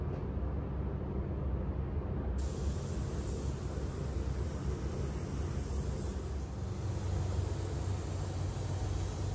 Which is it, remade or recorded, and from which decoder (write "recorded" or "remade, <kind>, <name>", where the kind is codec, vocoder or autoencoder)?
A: recorded